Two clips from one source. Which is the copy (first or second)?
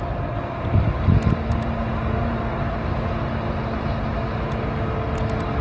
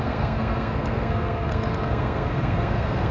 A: second